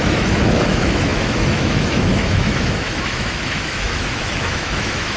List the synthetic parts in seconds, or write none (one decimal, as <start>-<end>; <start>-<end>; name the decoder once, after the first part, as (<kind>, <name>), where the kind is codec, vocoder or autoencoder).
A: 0.0-5.2 (autoencoder, DAC-VAE)